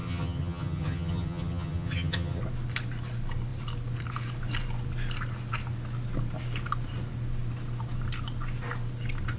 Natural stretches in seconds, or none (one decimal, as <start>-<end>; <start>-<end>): 2.4-9.4